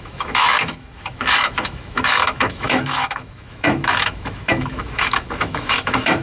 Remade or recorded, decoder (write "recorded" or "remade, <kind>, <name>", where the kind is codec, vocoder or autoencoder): remade, autoencoder, DAC-VAE